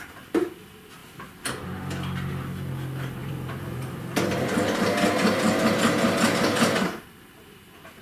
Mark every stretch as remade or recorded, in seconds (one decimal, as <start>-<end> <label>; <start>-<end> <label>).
0.0-3.2 recorded; 3.2-4.3 remade; 4.3-8.0 recorded